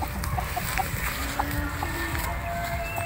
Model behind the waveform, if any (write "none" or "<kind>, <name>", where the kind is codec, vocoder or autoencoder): none